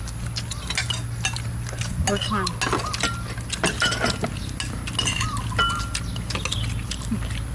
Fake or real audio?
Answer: real